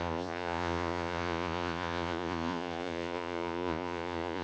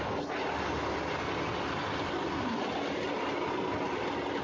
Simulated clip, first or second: first